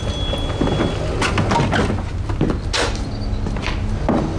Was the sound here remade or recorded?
recorded